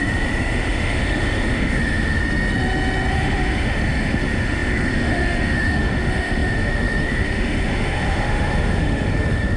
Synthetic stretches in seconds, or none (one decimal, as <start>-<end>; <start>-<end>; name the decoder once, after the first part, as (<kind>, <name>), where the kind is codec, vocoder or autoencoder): 0.0-2.2 (autoencoder, DAC-VAE); 3.1-9.6

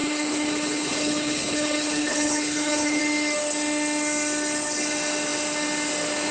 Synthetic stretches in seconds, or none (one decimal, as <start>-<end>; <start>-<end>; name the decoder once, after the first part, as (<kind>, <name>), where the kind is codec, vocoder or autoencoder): 0.0-3.0 (codec, HILCodec)